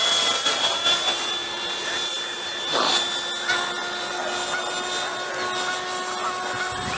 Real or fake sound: real